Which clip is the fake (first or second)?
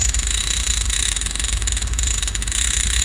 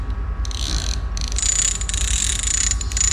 first